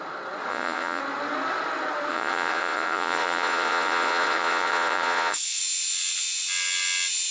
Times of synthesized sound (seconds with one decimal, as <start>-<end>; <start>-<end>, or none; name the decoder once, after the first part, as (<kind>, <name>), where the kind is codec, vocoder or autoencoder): 0.5-1.0 (vocoder, Vocos); 2.1-5.6